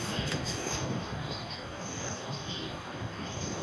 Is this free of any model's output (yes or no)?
no